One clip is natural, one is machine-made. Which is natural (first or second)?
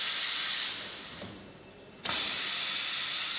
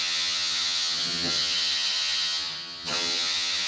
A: first